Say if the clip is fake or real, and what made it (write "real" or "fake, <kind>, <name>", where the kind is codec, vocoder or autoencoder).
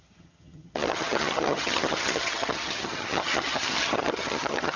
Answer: fake, vocoder, HiFi-GAN